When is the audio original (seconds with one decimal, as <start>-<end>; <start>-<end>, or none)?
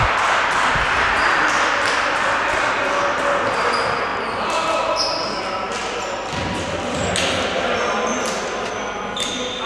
0.0-9.7